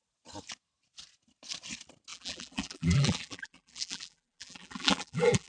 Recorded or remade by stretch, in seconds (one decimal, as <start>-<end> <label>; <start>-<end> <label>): 0.0-2.1 recorded; 2.1-5.5 remade

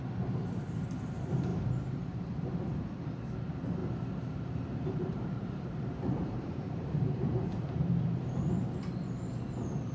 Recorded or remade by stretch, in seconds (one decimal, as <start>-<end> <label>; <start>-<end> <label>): 0.0-1.5 recorded; 1.5-2.2 remade; 2.2-3.8 recorded; 3.8-7.9 remade; 7.9-9.9 recorded